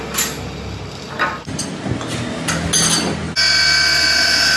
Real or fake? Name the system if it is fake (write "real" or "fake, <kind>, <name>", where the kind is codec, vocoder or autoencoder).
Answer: real